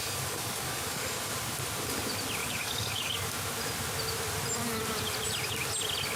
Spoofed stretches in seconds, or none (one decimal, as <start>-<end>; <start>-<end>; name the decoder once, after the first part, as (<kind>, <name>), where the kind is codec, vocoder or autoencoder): 0.0-1.3 (codec, DAC); 2.4-3.3